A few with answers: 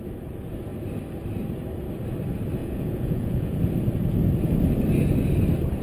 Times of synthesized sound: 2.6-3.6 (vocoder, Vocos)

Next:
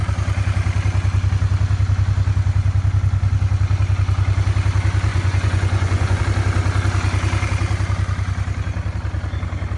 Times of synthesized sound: 5.1-6.2 (vocoder, Vocos)

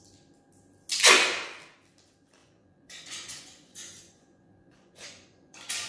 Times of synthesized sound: 2.4-5.9 (vocoder, Vocos)

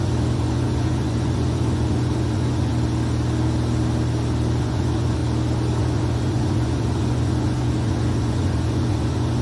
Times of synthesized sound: 0.0-2.7 (vocoder, Vocos); 4.6-5.2; 5.8-9.4

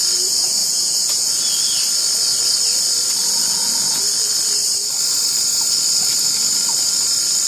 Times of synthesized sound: 0.6-1.5 (vocoder, Vocos); 3.2-4.3